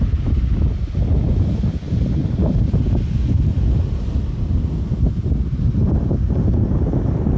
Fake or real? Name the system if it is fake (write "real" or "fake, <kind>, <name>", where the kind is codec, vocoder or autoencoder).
real